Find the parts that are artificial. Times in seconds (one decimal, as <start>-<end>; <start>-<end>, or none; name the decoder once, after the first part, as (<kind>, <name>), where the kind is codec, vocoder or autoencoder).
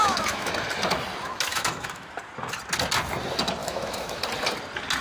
0.0-0.5 (autoencoder, DAC-VAE); 1.5-2.1; 3.6-4.2